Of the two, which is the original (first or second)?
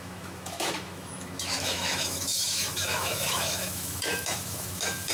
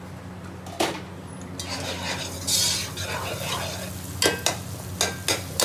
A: second